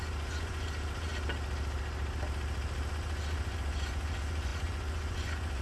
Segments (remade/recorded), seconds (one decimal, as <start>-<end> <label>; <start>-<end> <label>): 0.0-1.1 remade; 1.1-2.9 recorded; 2.9-5.6 remade